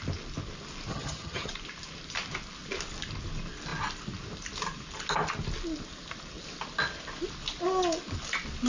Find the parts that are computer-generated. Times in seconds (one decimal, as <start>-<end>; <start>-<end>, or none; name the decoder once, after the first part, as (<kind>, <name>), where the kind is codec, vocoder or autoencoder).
0.9-1.5 (vocoder, HiFi-GAN)